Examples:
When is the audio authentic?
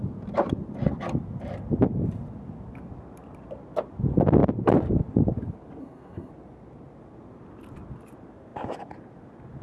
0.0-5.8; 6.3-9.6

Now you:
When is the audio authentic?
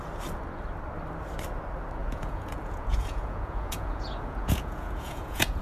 0.0-2.0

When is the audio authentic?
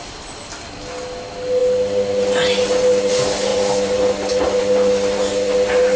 0.0-6.0